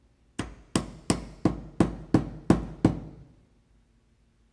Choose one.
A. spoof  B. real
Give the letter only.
B